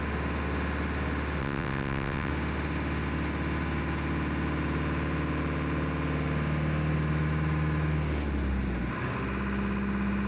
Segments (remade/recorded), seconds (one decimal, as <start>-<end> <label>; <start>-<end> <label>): 0.0-1.4 recorded; 1.4-2.3 remade; 2.3-10.3 recorded